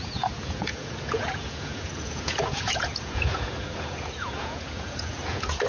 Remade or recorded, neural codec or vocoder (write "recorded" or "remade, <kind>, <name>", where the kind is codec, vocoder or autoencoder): remade, vocoder, Vocos